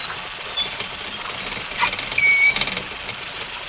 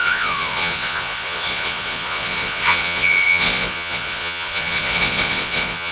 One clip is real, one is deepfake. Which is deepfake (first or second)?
second